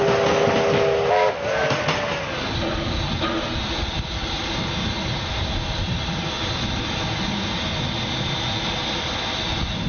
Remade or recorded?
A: recorded